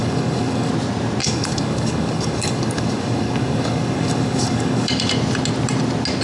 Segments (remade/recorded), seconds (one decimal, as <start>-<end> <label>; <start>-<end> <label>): 0.0-0.7 remade; 0.7-1.2 recorded; 1.2-4.9 remade; 4.9-6.2 recorded